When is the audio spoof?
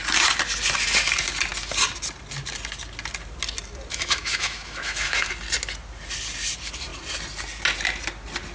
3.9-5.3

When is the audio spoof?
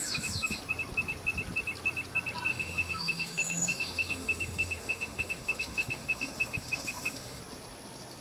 0.0-0.6; 2.5-7.4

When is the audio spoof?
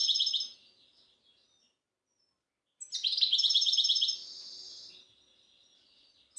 none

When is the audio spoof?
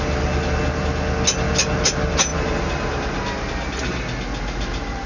none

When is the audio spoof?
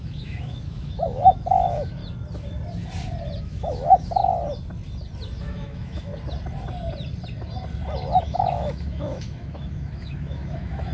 0.0-2.0; 3.4-4.2; 5.4-6.1; 8.2-10.9